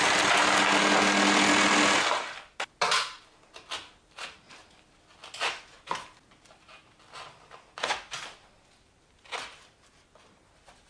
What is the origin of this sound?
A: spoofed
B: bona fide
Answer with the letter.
B